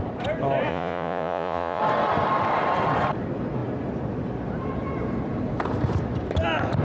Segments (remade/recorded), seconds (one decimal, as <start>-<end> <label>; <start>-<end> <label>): 0.0-0.7 recorded; 0.7-1.8 remade; 1.8-6.8 recorded